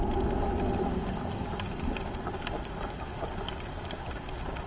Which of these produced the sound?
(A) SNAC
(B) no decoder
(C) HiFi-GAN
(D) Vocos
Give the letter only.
B